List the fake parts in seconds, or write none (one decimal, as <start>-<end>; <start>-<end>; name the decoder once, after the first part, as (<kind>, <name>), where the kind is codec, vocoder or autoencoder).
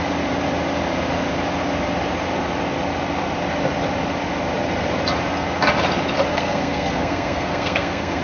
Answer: 6.3-8.2 (codec, SNAC)